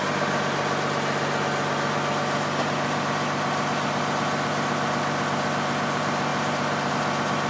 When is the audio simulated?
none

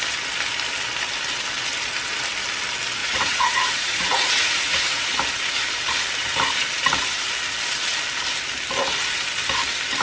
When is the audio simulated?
3.0-5.1

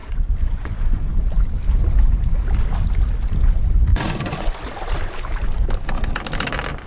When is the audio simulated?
0.0-1.1; 3.9-4.6

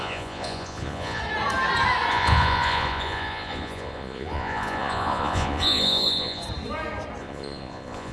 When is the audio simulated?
0.0-1.2; 2.1-6.4; 7.2-8.1

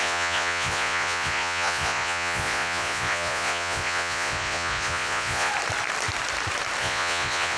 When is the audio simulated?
0.0-5.5; 6.8-7.6

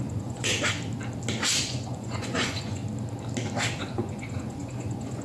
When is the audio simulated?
0.0-0.5; 1.6-2.8; 3.8-5.2

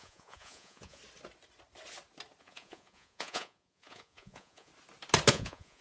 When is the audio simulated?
0.0-1.0; 2.4-4.7; 5.3-5.8